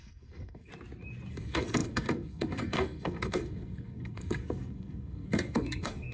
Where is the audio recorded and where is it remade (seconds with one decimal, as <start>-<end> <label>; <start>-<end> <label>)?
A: 0.0-0.7 remade; 0.7-1.3 recorded; 1.3-6.1 remade